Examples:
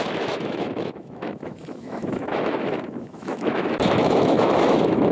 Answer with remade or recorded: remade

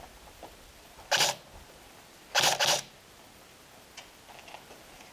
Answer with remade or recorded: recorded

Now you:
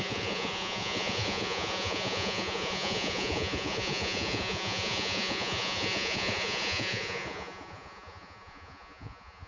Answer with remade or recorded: remade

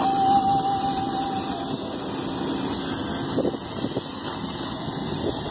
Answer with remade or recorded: recorded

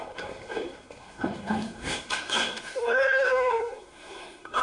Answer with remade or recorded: remade